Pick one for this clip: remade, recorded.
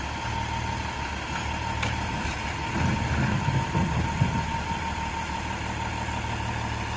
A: recorded